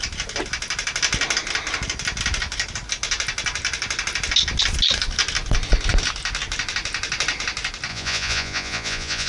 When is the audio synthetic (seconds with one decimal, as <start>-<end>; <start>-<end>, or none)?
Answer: 7.9-9.3